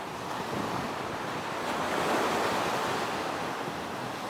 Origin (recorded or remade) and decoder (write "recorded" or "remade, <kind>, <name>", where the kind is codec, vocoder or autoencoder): recorded